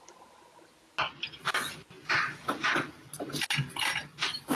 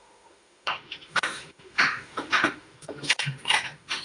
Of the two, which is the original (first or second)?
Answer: first